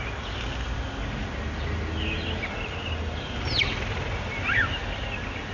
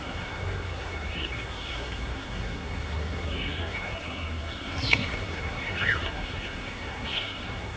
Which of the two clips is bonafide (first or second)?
first